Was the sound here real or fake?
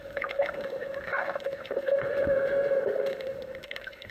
fake